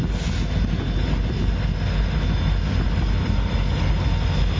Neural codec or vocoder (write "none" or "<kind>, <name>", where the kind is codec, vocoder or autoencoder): none